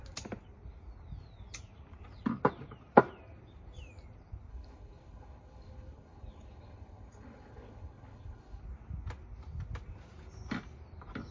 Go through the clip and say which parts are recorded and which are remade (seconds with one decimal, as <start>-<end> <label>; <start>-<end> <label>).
0.0-4.5 recorded; 4.5-8.6 remade; 8.6-11.3 recorded

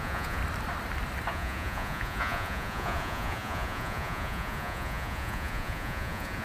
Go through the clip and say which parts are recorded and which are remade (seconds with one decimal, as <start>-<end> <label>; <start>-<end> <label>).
0.0-0.4 remade; 0.4-1.3 recorded; 1.3-6.4 remade

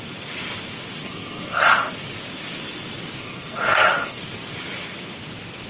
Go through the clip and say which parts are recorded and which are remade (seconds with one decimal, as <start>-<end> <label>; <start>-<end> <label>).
0.0-1.0 recorded; 1.0-1.9 remade; 1.9-3.2 recorded; 3.2-4.2 remade; 4.2-5.7 recorded

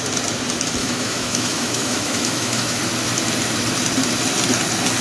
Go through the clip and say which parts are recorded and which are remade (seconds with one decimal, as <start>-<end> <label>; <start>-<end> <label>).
0.0-0.8 recorded; 0.8-2.8 remade; 2.8-5.0 recorded